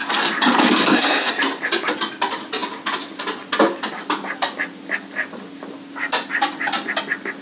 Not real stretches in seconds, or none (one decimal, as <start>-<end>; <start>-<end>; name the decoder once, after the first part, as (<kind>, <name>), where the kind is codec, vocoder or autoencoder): 0.6-1.3 (codec, SNAC)